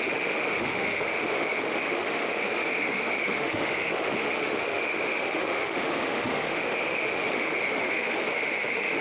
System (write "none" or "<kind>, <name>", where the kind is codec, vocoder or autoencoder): autoencoder, DAC-VAE